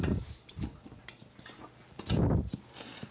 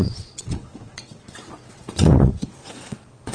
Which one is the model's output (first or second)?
second